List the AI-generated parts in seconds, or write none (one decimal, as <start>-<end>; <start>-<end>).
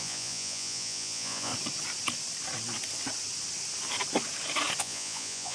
0.0-1.5; 4.8-5.5